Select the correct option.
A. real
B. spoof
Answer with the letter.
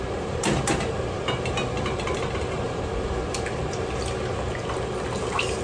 A